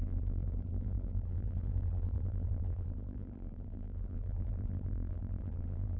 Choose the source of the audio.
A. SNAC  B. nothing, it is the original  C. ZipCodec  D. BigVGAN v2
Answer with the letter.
D